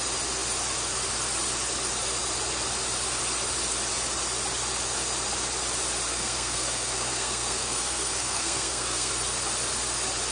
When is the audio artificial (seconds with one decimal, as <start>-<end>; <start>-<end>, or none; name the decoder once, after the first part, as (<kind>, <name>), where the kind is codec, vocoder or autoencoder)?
6.1-9.1 (codec, SNAC)